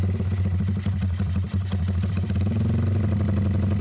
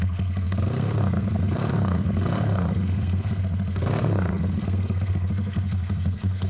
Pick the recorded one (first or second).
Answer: first